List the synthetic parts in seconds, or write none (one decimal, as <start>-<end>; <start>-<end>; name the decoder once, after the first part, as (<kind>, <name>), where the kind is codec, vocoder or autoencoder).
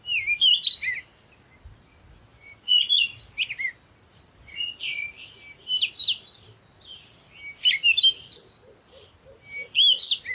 2.3-3.2 (vocoder, Vocos)